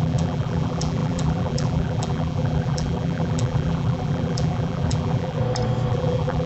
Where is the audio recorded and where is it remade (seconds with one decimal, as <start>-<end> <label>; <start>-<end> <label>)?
0.0-5.4 remade; 5.4-5.9 recorded; 5.9-6.5 remade